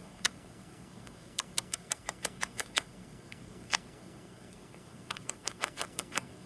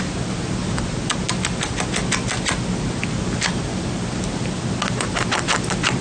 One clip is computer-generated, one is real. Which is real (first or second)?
second